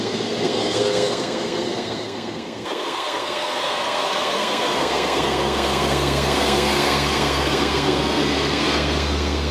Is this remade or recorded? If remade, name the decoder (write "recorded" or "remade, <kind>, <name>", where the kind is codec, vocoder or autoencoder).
remade, codec, SNAC